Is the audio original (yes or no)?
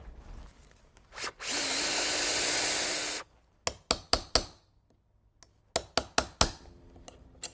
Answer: yes